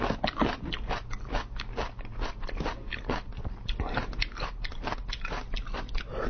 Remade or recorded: recorded